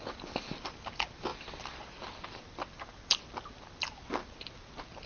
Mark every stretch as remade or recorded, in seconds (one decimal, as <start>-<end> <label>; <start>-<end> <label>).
0.0-5.1 recorded